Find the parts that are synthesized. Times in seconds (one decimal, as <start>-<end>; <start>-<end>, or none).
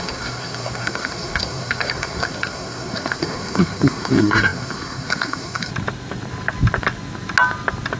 0.0-5.7